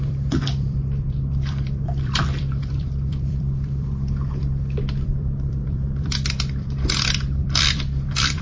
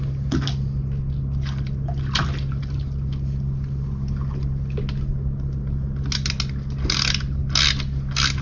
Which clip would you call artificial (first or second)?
first